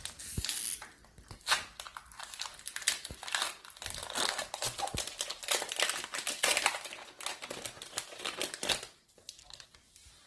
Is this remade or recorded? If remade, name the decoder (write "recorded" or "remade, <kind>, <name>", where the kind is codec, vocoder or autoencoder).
recorded